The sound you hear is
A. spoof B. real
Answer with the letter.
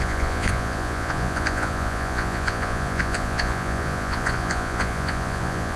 A